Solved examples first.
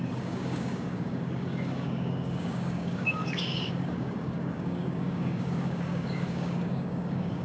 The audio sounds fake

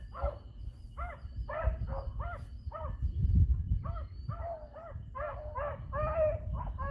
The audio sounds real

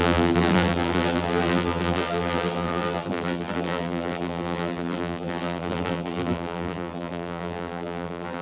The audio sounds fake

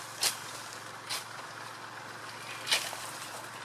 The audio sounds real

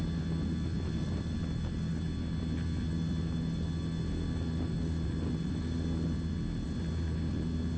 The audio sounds real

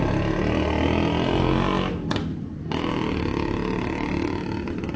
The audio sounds real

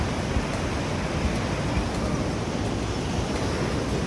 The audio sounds real